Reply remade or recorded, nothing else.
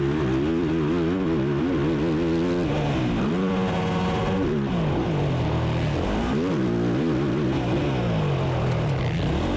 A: recorded